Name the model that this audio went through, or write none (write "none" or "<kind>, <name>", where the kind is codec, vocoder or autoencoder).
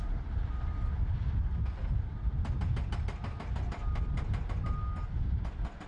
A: none